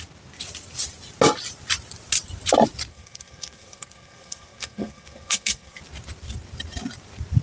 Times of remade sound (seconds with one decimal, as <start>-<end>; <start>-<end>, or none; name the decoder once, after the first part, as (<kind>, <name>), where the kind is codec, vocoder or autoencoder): 2.9-5.8 (codec, SNAC)